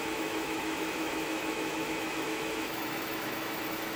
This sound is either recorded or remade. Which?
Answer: remade